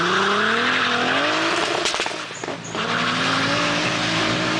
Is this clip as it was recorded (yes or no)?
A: yes